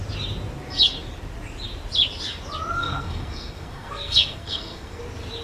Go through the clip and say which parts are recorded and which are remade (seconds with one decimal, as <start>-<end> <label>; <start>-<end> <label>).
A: 0.0-2.8 recorded; 2.8-5.0 remade; 5.0-5.4 recorded